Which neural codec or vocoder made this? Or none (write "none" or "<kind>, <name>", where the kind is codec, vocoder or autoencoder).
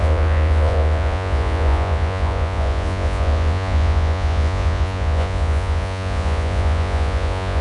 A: vocoder, Vocos